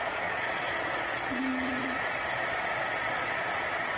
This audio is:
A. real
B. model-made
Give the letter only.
B